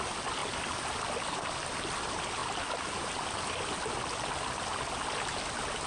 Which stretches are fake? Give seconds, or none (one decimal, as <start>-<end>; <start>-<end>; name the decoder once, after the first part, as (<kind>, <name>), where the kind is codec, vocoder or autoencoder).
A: none